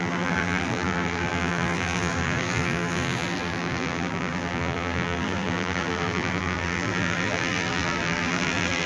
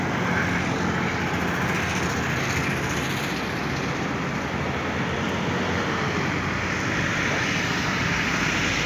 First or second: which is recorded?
second